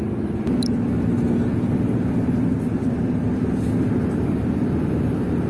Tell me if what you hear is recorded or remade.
recorded